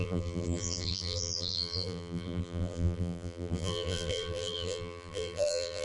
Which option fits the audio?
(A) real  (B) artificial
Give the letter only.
B